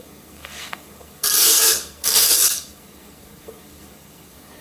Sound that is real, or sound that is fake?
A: fake